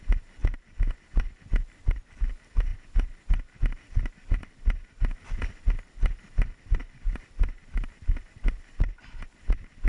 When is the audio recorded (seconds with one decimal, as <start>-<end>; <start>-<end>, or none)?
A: 0.0-0.4; 2.3-6.8; 9.4-9.9